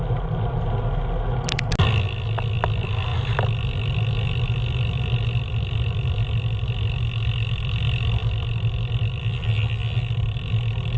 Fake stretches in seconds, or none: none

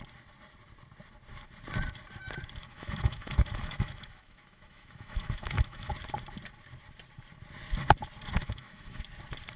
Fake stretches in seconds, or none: 2.6-5.9 (autoencoder, DAC-VAE); 8.4-9.0

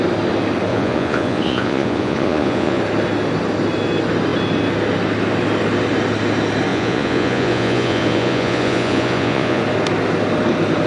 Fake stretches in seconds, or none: 0.7-2.8 (vocoder, Vocos); 6.7-9.6

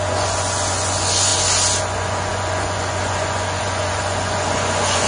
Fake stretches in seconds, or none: 0.0-1.3 (vocoder, Vocos); 1.8-5.1